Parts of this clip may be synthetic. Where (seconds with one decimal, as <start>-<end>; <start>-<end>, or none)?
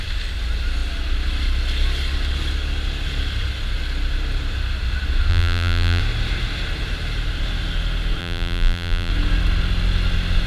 5.3-6.0; 8.2-9.1